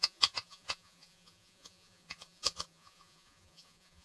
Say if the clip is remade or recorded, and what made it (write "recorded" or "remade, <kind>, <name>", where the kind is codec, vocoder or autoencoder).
remade, vocoder, Vocos